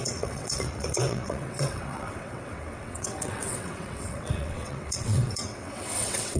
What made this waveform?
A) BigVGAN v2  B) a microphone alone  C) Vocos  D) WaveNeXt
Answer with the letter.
D